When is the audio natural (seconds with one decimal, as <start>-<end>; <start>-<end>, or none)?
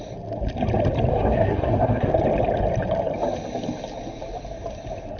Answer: 0.0-1.1; 2.1-5.2